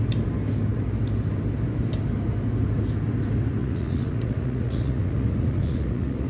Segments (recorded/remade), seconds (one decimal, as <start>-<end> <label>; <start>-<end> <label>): 0.0-3.6 recorded; 3.6-6.3 remade